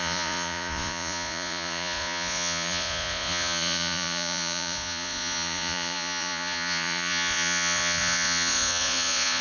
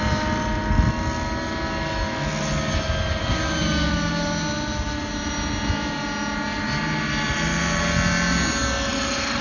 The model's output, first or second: first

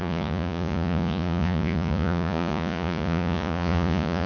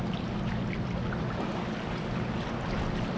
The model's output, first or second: first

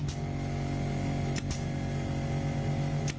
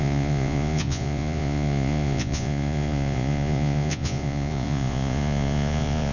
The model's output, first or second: second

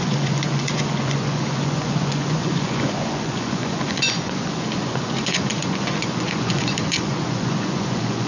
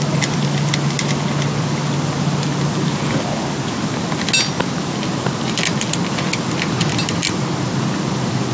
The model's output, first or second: first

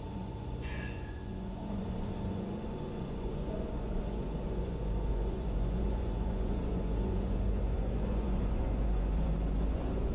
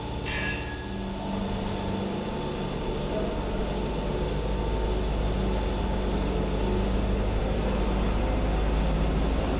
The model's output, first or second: first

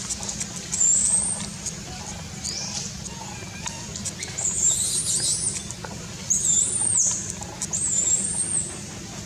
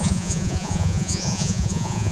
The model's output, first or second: second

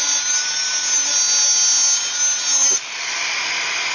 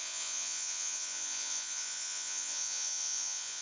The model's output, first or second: second